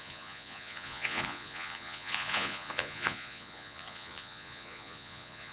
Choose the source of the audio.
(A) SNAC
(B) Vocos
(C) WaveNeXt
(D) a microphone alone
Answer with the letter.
B